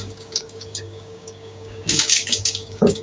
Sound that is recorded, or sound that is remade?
remade